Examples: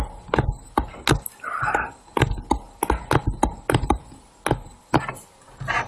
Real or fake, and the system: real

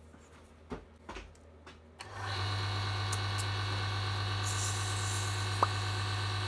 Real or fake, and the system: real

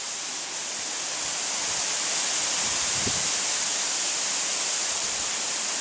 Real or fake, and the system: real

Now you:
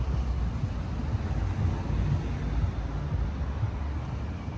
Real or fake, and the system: real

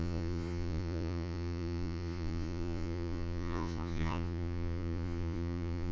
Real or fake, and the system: fake, vocoder, Vocos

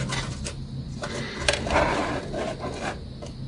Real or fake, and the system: real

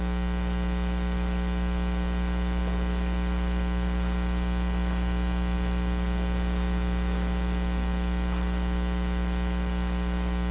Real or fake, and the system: real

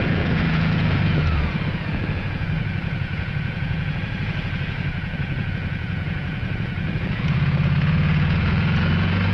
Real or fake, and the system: fake, vocoder, Vocos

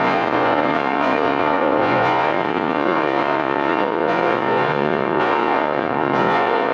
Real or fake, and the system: fake, vocoder, Vocos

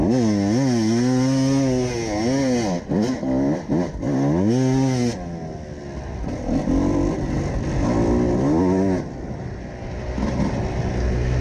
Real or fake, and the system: real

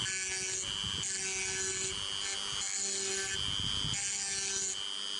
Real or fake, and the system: real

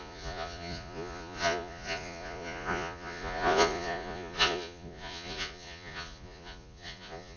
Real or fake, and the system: fake, vocoder, Vocos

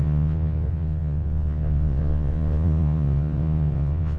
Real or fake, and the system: fake, vocoder, Vocos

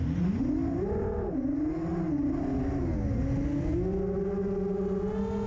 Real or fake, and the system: real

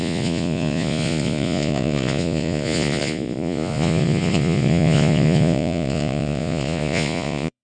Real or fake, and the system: fake, vocoder, Vocos